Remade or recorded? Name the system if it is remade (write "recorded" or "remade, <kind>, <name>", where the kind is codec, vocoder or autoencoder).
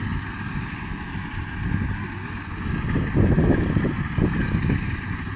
recorded